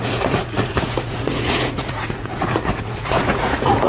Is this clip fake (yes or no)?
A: yes